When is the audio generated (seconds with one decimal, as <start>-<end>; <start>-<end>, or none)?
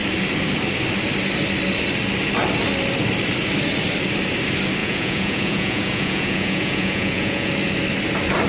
4.8-7.5